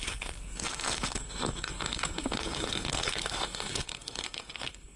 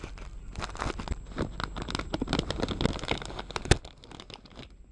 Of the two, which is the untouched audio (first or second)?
second